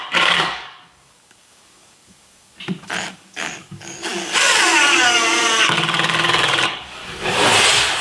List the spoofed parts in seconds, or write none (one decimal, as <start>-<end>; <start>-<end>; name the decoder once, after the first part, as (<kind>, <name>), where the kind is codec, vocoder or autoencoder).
0.0-2.5 (codec, DAC); 3.1-7.0